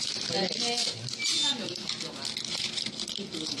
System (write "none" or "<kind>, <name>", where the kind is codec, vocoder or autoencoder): none